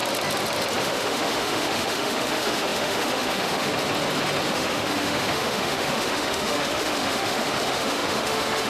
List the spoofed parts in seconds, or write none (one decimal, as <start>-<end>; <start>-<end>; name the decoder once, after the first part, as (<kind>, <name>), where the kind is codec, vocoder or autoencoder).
0.8-3.7 (autoencoder, DAC-VAE); 4.5-8.7